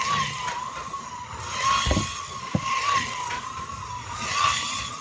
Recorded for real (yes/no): yes